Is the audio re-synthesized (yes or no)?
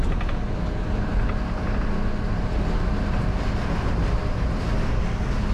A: no